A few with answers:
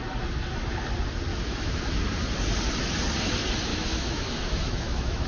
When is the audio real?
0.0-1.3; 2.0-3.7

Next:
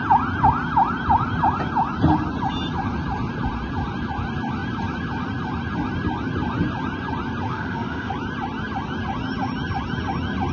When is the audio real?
0.0-7.5; 8.1-10.5

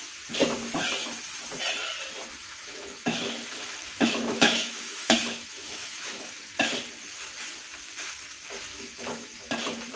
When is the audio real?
0.0-2.4; 6.7-8.7; 9.5-10.0